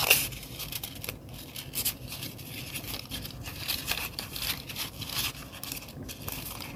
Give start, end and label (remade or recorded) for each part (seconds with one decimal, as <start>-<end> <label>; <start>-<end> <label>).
0.0-0.5 remade; 0.5-3.5 recorded; 3.5-4.0 remade; 4.0-6.8 recorded